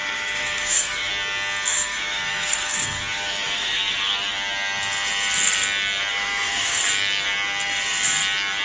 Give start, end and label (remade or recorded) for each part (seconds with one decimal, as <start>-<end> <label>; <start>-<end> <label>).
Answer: 0.0-1.1 remade; 1.1-1.7 recorded; 1.7-3.8 remade; 3.8-6.1 recorded; 6.1-6.8 remade; 6.8-8.6 recorded